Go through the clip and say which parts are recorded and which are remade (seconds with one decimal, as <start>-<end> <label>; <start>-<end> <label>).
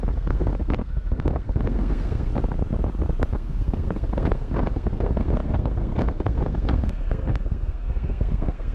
0.0-2.3 remade; 2.3-3.3 recorded; 3.3-8.7 remade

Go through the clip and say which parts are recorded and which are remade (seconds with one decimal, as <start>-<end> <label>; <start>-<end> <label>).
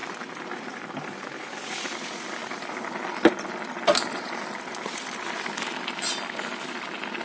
0.0-0.7 remade; 0.7-2.4 recorded; 2.4-6.6 remade; 6.6-7.2 recorded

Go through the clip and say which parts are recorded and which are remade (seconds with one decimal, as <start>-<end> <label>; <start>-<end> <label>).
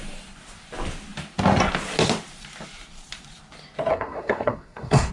0.0-3.9 recorded; 3.9-5.1 remade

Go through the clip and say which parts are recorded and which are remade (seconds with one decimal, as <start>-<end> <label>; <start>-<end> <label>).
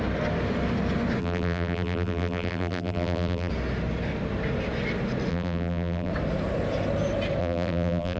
0.0-1.2 recorded; 1.2-3.5 remade; 3.5-5.3 recorded; 5.3-6.1 remade; 6.1-7.4 recorded; 7.4-8.2 remade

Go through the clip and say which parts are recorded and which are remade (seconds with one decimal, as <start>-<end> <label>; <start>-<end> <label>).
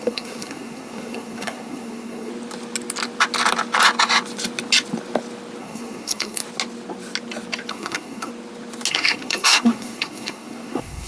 0.0-2.3 remade; 2.3-5.6 recorded; 5.6-6.4 remade; 6.4-7.7 recorded; 7.7-8.3 remade; 8.3-8.9 recorded; 8.9-11.1 remade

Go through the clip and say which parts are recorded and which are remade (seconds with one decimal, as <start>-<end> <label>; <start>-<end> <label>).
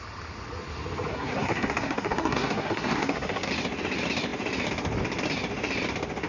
0.0-1.1 recorded; 1.1-3.5 remade; 3.5-6.3 recorded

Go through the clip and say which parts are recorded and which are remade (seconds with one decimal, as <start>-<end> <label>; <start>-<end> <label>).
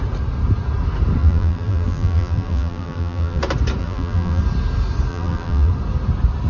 0.0-1.2 recorded; 1.2-3.4 remade; 3.4-3.8 recorded; 3.8-4.4 remade; 4.4-5.1 recorded; 5.1-5.7 remade; 5.7-6.5 recorded